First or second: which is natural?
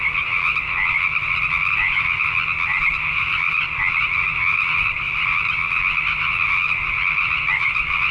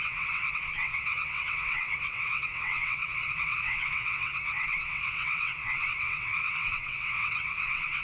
first